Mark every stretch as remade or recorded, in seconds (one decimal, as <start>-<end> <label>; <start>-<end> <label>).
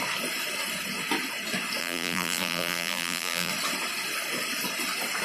0.0-1.8 recorded; 1.8-3.5 remade; 3.5-5.2 recorded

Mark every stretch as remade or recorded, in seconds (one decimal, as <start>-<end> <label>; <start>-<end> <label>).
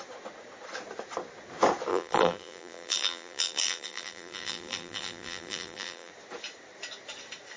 0.0-1.9 recorded; 1.9-6.1 remade; 6.1-7.6 recorded